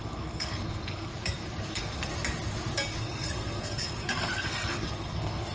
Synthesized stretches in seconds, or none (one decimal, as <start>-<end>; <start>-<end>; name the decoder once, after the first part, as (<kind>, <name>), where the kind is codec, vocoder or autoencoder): 0.0-1.1 (codec, SNAC); 1.7-2.1; 3.0-5.5